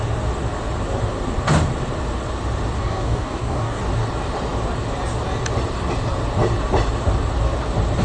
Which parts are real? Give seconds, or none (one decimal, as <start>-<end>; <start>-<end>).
0.0-2.8; 3.8-8.0